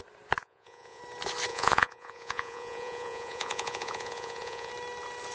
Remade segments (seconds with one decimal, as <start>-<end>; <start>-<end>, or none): 0.4-1.0; 1.5-4.7